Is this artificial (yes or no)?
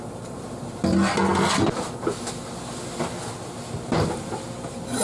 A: no